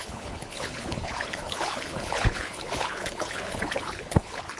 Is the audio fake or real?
fake